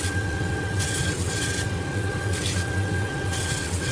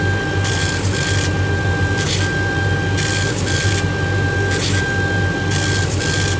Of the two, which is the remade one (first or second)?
first